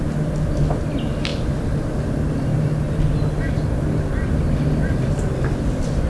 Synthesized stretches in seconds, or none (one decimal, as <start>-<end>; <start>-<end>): none